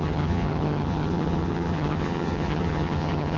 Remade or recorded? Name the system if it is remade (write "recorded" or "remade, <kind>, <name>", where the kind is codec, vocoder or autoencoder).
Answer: remade, vocoder, HiFi-GAN